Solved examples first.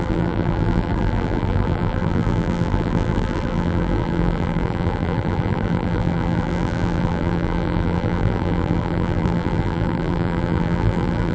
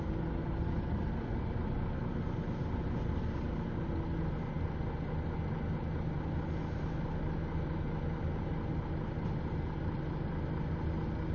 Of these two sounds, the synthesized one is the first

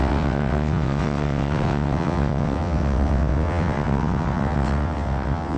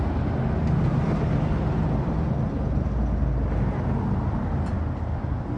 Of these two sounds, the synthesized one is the first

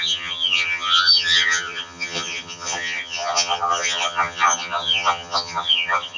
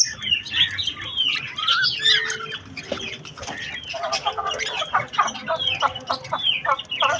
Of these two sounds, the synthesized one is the first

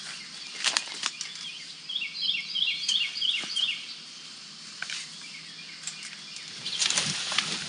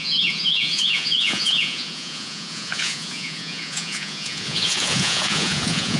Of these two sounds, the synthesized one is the second